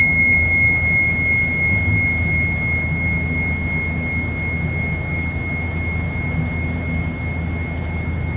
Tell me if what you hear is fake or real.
real